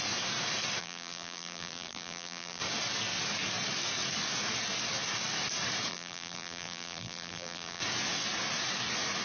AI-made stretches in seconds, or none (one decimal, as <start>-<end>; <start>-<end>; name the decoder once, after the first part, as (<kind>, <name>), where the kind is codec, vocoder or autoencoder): 0.8-2.6 (vocoder, BigVGAN v2); 5.9-7.8